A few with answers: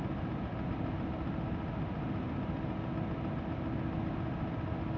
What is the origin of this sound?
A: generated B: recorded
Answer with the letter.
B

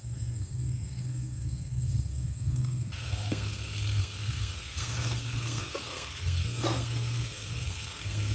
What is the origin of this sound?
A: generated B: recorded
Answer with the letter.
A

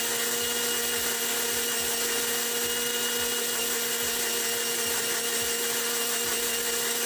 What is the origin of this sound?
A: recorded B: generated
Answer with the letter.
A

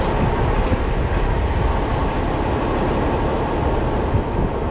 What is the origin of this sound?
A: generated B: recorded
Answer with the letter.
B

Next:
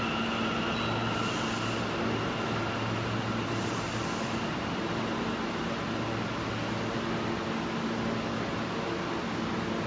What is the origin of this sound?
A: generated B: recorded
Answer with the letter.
B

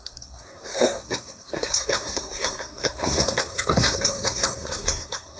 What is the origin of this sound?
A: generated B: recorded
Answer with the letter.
A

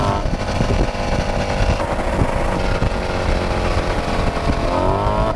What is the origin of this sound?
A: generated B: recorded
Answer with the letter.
B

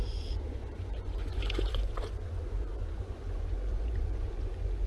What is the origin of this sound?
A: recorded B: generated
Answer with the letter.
B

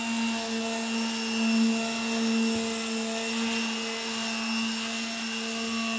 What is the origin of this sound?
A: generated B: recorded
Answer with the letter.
B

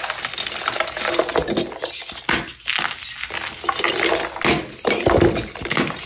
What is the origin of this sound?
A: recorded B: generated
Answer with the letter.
A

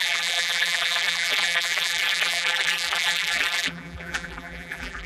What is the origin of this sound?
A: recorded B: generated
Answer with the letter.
B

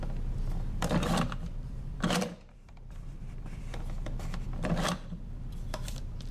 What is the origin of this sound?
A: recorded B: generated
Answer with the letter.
B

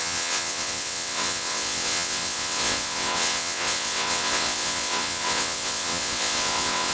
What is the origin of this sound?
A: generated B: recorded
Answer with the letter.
A